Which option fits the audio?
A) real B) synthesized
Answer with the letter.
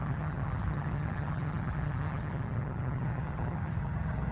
B